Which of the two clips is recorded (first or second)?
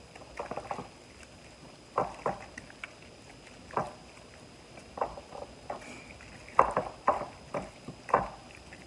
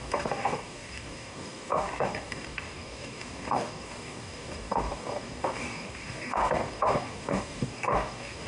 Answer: first